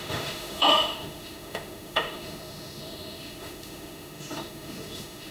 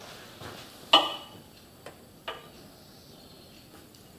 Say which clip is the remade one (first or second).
first